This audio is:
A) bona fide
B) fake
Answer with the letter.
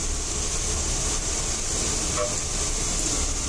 A